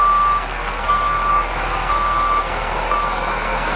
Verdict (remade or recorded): remade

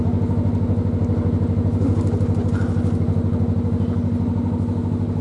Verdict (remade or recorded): recorded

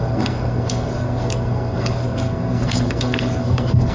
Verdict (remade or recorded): remade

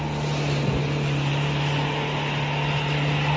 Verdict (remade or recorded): recorded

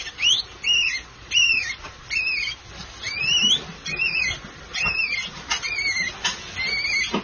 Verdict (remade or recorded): recorded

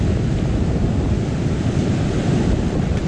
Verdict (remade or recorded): recorded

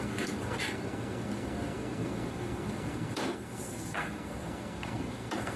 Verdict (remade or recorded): remade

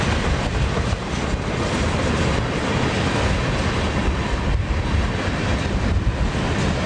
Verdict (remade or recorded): recorded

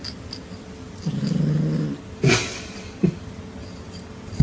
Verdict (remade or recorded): recorded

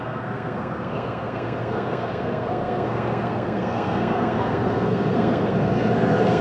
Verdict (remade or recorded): remade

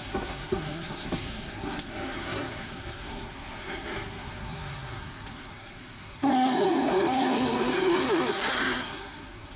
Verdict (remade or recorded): remade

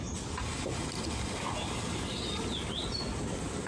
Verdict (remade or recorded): recorded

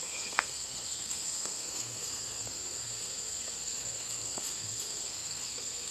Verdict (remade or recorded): remade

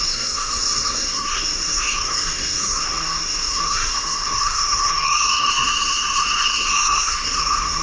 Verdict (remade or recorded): remade